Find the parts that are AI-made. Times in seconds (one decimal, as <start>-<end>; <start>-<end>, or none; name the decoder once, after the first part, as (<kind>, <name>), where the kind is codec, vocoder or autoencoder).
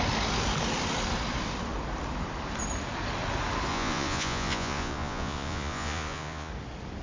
3.7-6.5 (vocoder, Vocos)